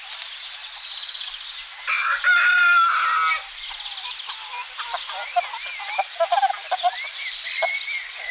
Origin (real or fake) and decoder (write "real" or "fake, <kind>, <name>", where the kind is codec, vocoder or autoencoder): real